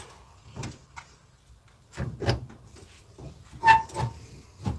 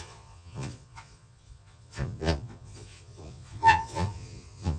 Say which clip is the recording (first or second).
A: first